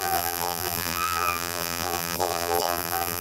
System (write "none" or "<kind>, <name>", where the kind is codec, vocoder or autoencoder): vocoder, BigVGAN v2